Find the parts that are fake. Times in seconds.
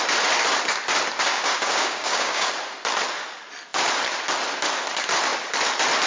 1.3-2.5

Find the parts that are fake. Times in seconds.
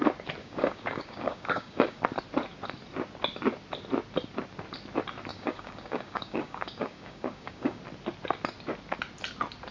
0.4-2.0; 5.3-7.8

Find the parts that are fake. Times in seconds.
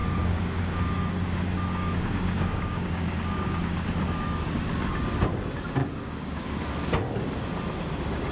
0.0-4.5; 5.8-6.6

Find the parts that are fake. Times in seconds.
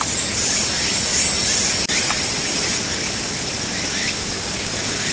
4.0-5.1